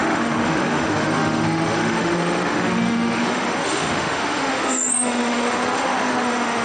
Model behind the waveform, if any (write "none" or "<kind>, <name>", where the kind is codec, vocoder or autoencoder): autoencoder, DAC-VAE